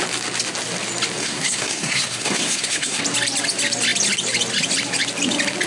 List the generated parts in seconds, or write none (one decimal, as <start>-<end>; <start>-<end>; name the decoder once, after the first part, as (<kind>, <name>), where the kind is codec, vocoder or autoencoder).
1.2-3.0 (codec, SNAC)